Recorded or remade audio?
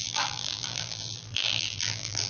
remade